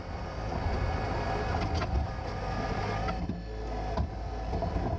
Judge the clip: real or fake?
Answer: real